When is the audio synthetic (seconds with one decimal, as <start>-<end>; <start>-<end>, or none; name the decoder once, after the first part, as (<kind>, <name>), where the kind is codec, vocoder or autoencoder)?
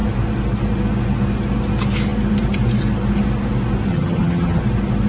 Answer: 3.9-4.6 (vocoder, HiFi-GAN)